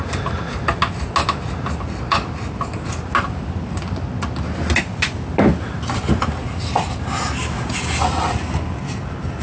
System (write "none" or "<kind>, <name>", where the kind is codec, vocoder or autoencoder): none